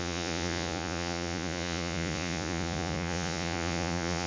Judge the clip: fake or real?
fake